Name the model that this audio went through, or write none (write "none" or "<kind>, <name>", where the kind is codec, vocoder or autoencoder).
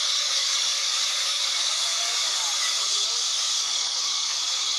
codec, DAC